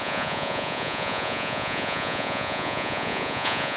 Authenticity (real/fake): fake